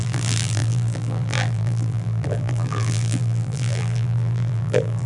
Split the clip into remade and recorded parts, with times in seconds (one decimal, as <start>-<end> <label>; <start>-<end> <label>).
0.0-5.1 remade